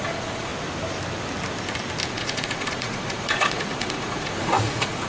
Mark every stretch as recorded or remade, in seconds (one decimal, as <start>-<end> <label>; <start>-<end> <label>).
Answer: 0.0-0.5 remade; 0.5-2.1 recorded; 2.1-5.1 remade